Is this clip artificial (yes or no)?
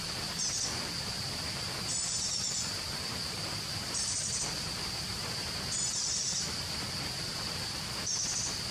yes